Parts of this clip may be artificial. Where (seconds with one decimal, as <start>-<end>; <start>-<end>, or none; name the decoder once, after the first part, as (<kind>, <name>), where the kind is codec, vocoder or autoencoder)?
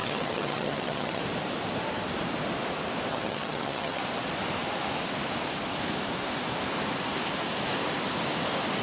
0.0-1.2 (vocoder, HiFi-GAN); 3.1-4.0